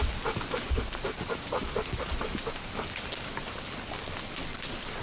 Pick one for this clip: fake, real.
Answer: real